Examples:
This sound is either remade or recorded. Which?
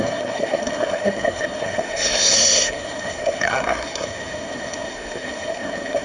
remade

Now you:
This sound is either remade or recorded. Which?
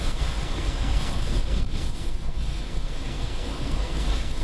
remade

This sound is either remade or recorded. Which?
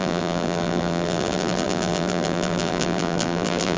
remade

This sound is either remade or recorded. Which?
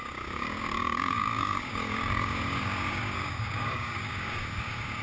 remade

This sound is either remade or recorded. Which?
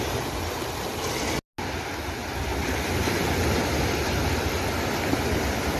recorded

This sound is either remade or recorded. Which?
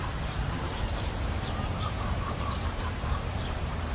remade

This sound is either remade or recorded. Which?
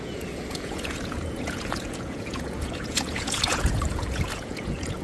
remade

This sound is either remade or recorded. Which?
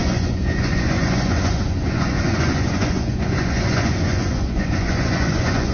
remade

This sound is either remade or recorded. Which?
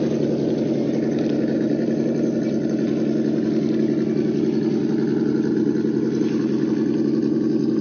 recorded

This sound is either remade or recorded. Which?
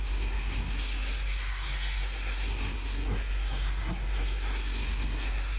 remade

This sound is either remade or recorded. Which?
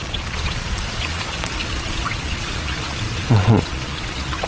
remade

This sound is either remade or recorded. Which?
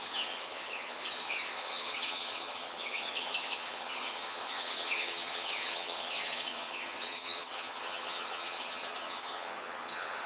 remade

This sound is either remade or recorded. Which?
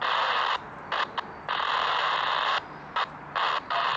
recorded